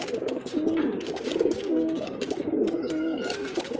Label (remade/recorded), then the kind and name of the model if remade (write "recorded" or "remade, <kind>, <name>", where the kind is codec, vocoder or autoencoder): remade, codec, DAC